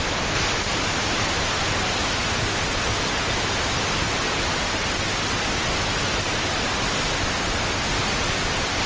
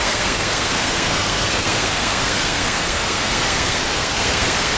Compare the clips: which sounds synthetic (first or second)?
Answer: second